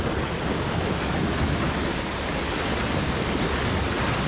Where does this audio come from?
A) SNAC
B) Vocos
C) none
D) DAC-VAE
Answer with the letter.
C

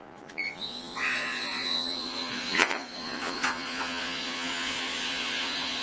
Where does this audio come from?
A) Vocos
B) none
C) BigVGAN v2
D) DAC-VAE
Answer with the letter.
A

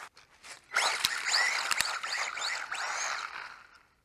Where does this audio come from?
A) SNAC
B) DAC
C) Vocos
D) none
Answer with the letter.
D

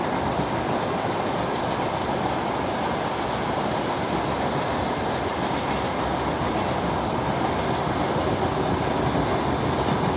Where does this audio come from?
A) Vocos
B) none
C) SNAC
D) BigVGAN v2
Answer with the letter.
B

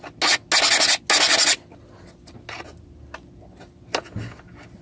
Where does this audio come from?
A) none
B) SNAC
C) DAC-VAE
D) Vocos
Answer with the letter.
A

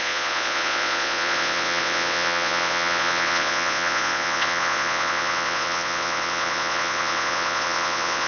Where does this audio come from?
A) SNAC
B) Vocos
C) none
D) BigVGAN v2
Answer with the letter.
B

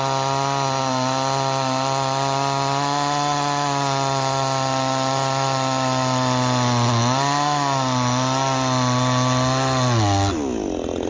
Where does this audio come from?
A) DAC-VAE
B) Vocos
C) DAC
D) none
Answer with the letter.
D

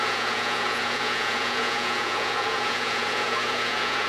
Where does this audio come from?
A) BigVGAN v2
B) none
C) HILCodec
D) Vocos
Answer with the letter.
D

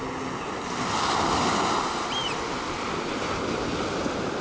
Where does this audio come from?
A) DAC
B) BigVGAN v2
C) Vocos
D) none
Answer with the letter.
D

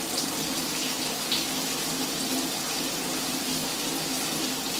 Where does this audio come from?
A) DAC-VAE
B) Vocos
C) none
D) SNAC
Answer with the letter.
C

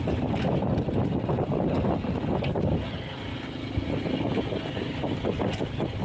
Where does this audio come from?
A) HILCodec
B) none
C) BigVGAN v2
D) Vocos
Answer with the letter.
B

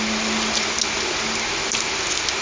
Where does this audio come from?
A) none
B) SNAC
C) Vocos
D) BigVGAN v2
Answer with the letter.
A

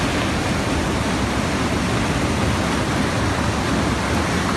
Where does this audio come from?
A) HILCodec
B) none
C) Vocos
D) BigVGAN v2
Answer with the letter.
B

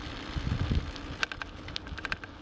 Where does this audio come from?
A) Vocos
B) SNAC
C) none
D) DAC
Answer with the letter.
C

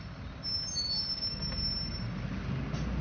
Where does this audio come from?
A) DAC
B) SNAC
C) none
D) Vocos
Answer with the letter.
C